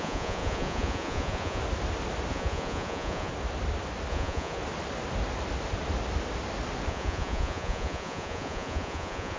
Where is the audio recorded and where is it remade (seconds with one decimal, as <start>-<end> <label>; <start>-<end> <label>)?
0.0-1.6 remade; 1.6-2.3 recorded; 2.3-3.3 remade; 3.3-4.1 recorded; 4.1-4.6 remade; 4.6-6.9 recorded; 6.9-9.4 remade